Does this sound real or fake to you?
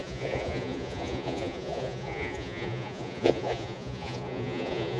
fake